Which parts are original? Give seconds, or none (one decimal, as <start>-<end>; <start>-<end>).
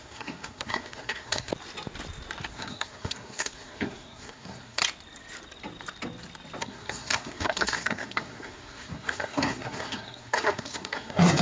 1.5-2.5; 4.8-6.6